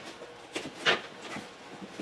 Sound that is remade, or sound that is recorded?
recorded